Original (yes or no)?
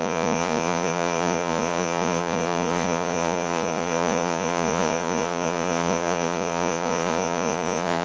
no